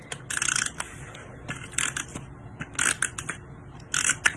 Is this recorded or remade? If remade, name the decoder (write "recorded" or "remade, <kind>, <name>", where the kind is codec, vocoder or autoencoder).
recorded